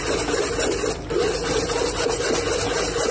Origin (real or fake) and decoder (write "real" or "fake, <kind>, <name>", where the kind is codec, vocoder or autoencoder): real